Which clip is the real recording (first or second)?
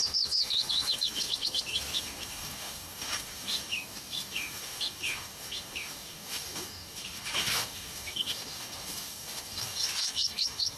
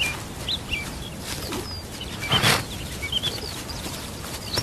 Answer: second